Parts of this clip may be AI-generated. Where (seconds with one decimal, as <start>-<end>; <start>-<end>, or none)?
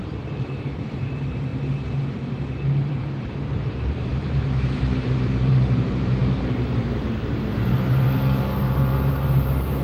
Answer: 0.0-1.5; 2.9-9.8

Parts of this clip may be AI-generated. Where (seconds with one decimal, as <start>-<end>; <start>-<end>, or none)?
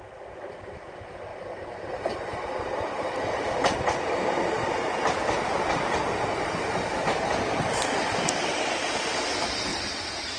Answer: 1.3-6.0; 9.7-10.4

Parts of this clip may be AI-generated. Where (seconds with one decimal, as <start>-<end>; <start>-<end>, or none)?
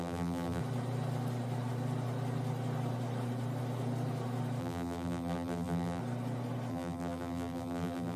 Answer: 0.0-0.6; 4.6-6.0; 6.7-8.2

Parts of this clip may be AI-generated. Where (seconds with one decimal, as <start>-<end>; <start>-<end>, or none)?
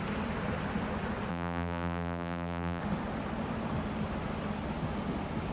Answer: 1.3-2.8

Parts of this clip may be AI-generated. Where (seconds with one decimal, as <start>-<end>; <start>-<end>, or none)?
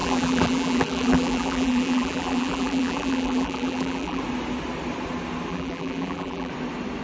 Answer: 0.0-4.2; 5.5-6.5